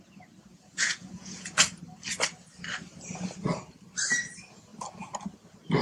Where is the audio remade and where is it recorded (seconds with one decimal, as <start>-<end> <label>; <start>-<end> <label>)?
0.0-0.5 recorded; 0.5-1.8 remade; 1.8-5.8 recorded